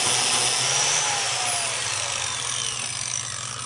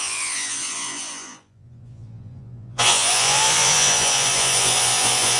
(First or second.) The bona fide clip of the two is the first